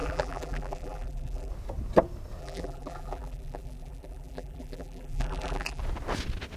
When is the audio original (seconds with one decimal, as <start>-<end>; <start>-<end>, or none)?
1.5-2.4; 5.8-6.6